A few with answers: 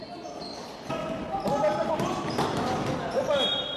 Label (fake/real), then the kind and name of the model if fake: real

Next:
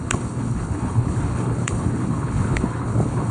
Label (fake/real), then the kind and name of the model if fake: fake, codec, HILCodec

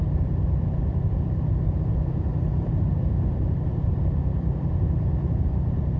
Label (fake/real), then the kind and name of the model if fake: fake, vocoder, BigVGAN v2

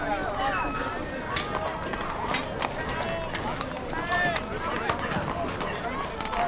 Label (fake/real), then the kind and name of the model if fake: real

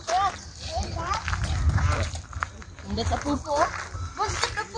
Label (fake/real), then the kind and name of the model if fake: real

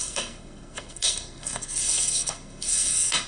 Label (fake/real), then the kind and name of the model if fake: fake, codec, SNAC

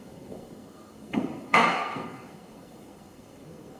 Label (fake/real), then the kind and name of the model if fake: fake, codec, SNAC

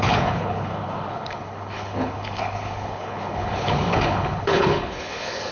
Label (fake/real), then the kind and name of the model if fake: fake, codec, HILCodec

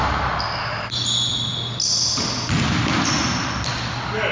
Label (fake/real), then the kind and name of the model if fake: real